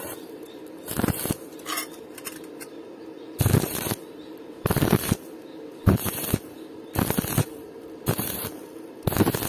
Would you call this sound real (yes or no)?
no